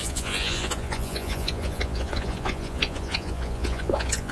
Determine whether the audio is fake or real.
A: fake